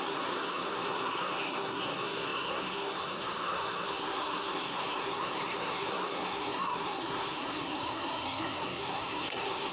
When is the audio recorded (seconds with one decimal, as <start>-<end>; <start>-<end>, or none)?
none